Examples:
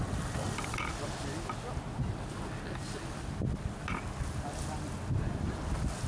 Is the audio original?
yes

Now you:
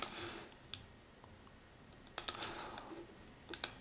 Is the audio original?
yes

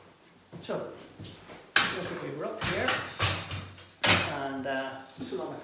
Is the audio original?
yes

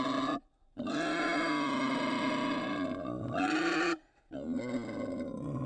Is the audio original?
yes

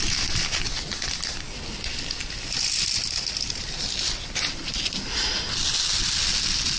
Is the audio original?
yes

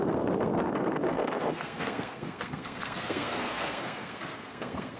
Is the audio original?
no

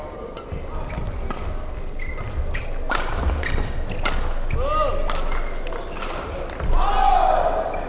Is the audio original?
yes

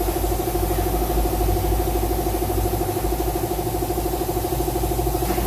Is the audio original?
yes